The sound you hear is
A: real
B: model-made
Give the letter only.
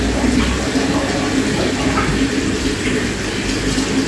A